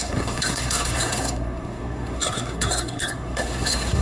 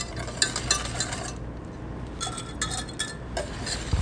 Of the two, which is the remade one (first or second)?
first